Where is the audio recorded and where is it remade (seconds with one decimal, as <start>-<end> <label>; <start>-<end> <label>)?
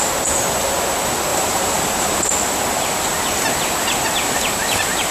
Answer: 0.0-1.3 recorded; 1.3-2.3 remade; 2.3-5.1 recorded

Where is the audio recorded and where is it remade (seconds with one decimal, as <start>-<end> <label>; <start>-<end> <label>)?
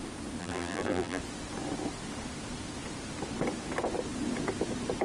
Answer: 0.0-0.4 recorded; 0.4-1.2 remade; 1.2-5.0 recorded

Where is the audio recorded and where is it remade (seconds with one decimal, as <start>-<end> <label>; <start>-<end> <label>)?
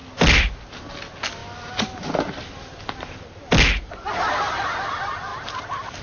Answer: 0.0-0.6 remade; 0.6-1.4 recorded; 1.4-3.4 remade; 3.4-6.0 recorded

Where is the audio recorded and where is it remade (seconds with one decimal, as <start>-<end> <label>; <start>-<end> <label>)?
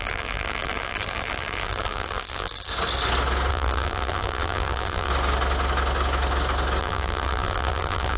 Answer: 0.0-2.7 remade; 2.7-3.5 recorded; 3.5-5.1 remade; 5.1-6.8 recorded; 6.8-8.2 remade